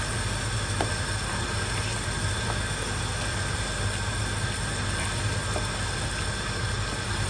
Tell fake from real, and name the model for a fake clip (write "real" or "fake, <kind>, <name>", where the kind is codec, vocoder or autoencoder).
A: real